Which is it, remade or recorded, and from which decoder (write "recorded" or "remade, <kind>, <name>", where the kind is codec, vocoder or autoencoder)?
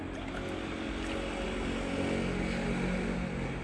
recorded